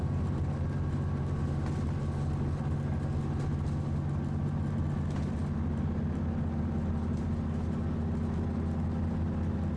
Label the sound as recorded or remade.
recorded